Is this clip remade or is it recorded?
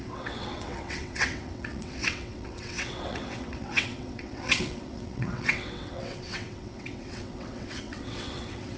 remade